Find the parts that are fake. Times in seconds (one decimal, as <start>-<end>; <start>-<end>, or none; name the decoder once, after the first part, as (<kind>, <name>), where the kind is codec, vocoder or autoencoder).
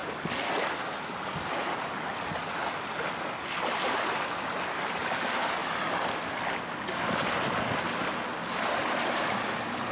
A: none